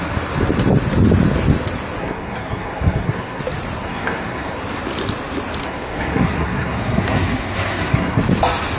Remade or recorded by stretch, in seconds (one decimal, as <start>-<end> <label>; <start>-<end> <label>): 0.0-2.0 recorded; 2.0-3.4 remade; 3.4-3.8 recorded; 3.8-4.6 remade; 4.6-5.6 recorded; 5.6-8.2 remade; 8.2-8.8 recorded